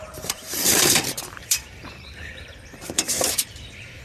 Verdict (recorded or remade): remade